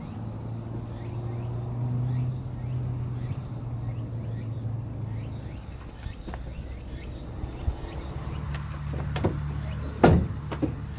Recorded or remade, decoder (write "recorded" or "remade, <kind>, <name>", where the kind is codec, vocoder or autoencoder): recorded